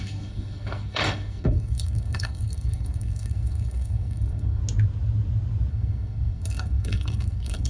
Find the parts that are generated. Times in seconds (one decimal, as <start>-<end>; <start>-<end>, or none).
0.0-4.6; 5.7-7.7